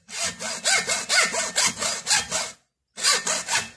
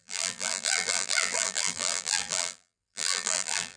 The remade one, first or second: second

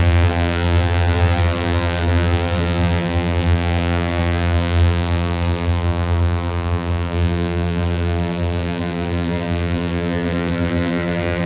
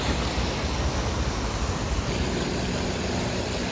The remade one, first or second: first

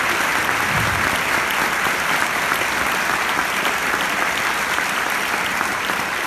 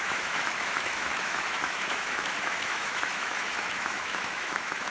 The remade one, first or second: second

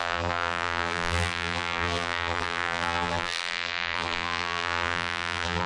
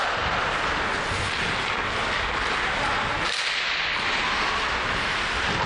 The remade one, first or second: first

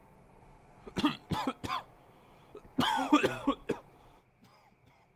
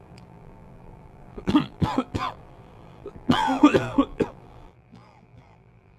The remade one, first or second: second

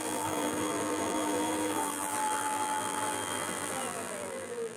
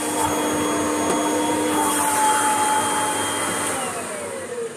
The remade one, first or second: first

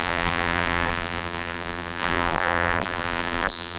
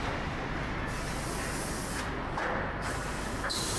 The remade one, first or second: first